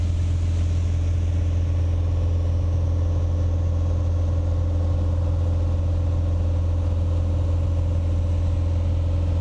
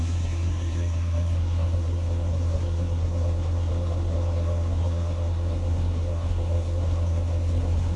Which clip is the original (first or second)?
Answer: first